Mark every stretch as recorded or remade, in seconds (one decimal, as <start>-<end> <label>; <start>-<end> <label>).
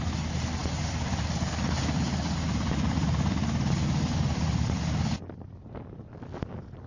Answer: 0.0-6.9 recorded